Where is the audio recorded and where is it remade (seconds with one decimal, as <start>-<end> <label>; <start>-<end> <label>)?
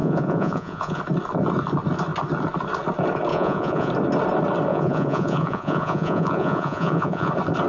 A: 0.0-1.0 remade; 1.0-3.3 recorded; 3.3-3.9 remade; 3.9-4.7 recorded; 4.7-7.3 remade; 7.3-7.7 recorded